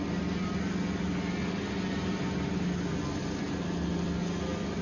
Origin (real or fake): real